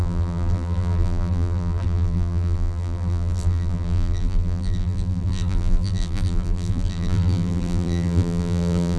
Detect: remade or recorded remade